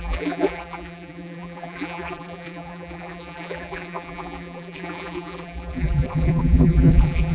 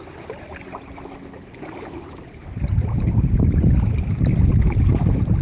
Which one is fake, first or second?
first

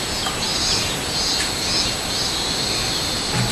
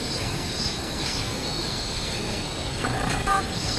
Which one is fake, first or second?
second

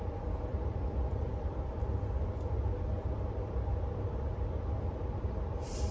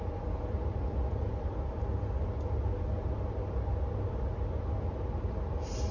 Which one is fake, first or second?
first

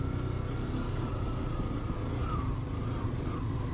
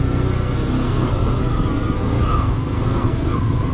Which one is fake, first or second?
second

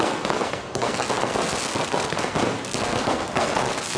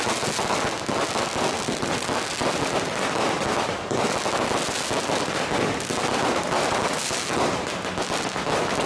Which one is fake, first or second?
first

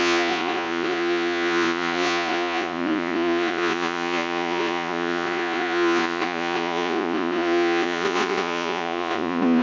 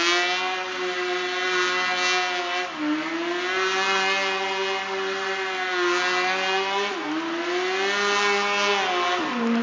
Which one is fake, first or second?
first